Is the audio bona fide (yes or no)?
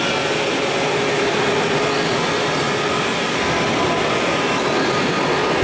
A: yes